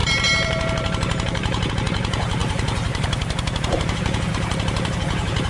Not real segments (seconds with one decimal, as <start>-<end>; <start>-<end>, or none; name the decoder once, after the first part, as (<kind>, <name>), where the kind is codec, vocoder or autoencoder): 0.0-1.7 (vocoder, BigVGAN v2); 2.4-5.5